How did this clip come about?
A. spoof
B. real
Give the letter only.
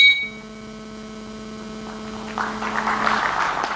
B